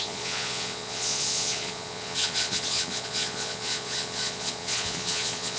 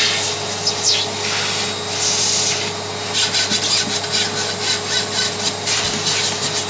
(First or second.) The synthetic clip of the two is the first